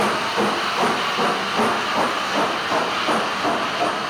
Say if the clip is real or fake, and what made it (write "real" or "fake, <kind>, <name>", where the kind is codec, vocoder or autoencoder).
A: real